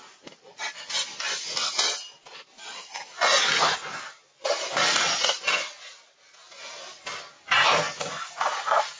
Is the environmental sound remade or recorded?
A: recorded